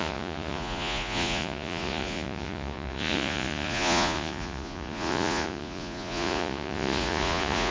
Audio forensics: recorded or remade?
remade